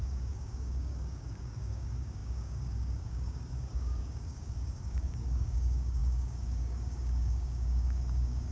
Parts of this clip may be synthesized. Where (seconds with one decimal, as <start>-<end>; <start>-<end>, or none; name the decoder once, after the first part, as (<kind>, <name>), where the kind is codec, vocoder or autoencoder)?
0.0-8.5 (codec, DAC)